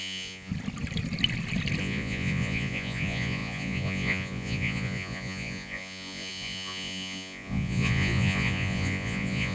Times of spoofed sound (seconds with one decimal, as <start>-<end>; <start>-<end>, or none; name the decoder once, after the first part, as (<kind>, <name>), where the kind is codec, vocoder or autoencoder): 0.0-0.5 (vocoder, Vocos); 1.8-9.5